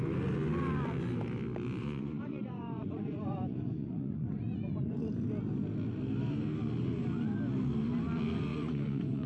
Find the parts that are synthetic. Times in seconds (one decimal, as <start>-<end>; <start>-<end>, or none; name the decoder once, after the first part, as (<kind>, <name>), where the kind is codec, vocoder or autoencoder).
1.8-5.2 (vocoder, Vocos); 8.5-9.3